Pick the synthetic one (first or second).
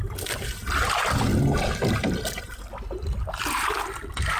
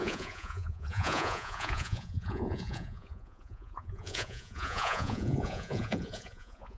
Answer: second